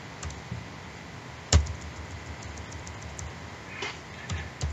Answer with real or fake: real